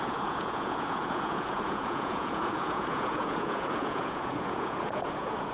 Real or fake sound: fake